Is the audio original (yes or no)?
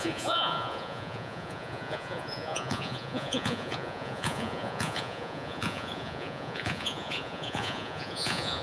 no